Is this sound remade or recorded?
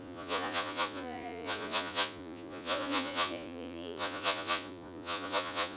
remade